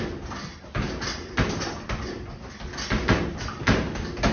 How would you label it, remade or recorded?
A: recorded